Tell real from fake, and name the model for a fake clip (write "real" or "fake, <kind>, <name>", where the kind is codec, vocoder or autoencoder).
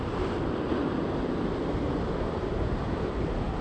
real